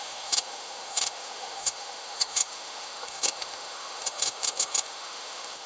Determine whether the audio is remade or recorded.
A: remade